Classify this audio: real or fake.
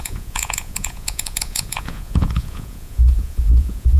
fake